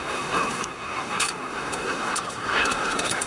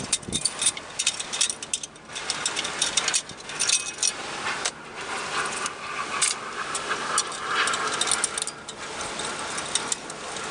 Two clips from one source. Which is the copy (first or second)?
first